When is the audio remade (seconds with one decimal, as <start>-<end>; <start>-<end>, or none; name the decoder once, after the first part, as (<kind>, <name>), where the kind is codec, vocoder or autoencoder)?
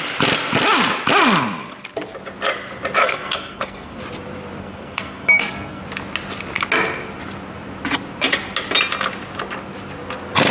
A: 3.0-4.0 (codec, SNAC); 4.6-5.8